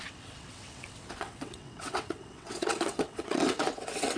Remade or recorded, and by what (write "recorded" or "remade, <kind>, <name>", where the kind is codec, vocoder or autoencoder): remade, vocoder, WaveNeXt